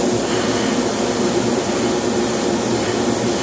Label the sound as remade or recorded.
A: recorded